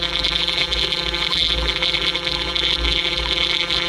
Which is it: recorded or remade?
remade